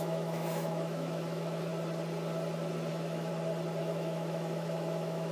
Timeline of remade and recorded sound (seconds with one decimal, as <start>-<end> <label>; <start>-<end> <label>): 0.0-1.7 remade; 1.7-2.9 recorded; 2.9-3.3 remade; 3.3-3.8 recorded; 3.8-5.3 remade